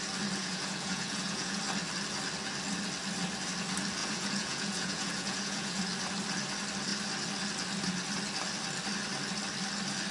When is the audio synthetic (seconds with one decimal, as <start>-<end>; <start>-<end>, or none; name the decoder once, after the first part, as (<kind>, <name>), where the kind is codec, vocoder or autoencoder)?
0.4-1.6 (vocoder, Vocos); 4.0-5.8